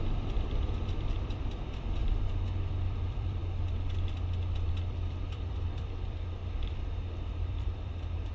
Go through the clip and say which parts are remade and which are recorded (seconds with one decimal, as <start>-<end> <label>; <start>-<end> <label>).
0.0-2.0 remade; 2.0-2.7 recorded; 2.7-3.4 remade; 3.4-4.7 recorded; 4.7-6.4 remade; 6.4-7.5 recorded; 7.5-8.3 remade